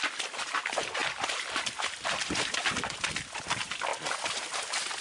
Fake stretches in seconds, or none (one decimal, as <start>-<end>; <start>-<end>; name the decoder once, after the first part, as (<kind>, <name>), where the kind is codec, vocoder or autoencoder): none